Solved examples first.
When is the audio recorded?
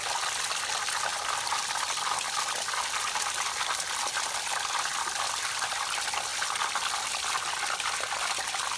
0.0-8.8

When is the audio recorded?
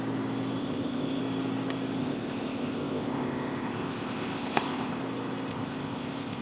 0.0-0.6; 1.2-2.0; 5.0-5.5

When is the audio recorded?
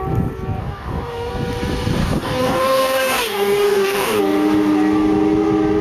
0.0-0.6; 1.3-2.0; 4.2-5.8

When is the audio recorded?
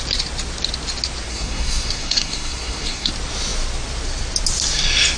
0.0-1.3; 3.1-5.2